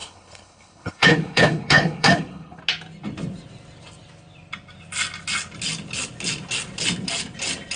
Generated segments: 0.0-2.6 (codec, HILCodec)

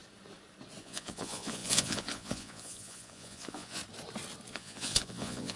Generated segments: 0.8-3.8 (vocoder, Vocos); 4.5-5.6

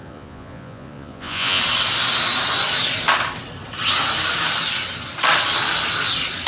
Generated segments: 0.0-1.6 (vocoder, Vocos)

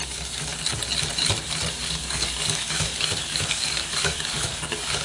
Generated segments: 0.0-0.5 (codec, DAC); 1.7-5.0

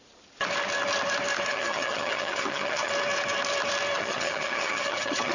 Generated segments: 1.5-2.9 (vocoder, HiFi-GAN); 4.0-5.3

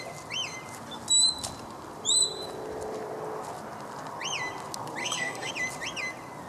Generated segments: 5.0-5.5 (codec, SNAC)